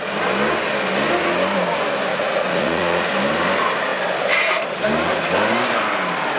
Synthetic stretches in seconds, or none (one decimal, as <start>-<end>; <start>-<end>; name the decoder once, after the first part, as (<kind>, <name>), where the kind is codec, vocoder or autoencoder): 2.1-3.1 (vocoder, Vocos)